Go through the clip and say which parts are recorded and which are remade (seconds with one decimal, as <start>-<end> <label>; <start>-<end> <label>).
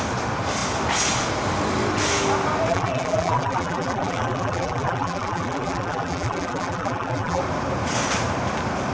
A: 0.0-2.7 recorded; 2.7-7.4 remade; 7.4-8.9 recorded